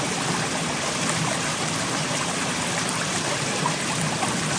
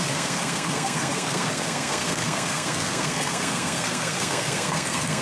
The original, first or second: first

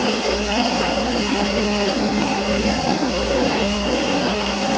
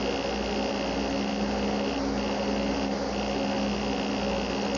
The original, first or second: second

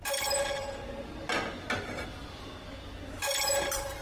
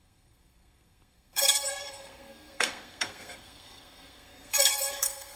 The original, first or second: first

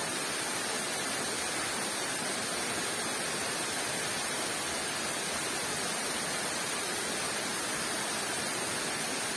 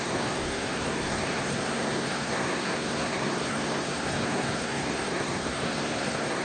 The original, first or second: first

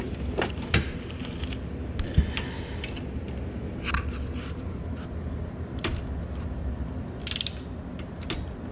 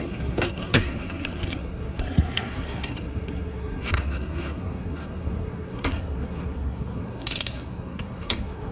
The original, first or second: first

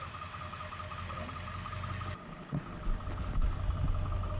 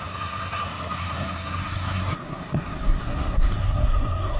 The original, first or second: first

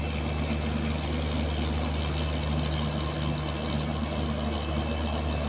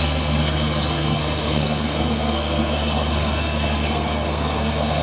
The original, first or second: first